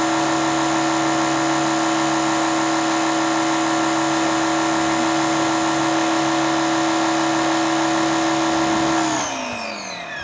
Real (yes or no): yes